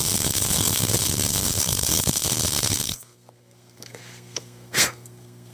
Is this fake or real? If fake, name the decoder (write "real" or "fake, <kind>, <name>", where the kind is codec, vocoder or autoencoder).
fake, codec, SNAC